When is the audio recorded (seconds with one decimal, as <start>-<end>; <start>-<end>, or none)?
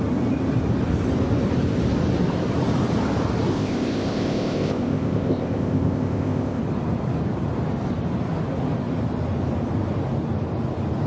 0.0-3.5; 6.6-11.1